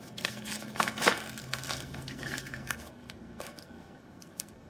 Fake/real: fake